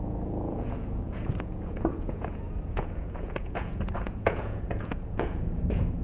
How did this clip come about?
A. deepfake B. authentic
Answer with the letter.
A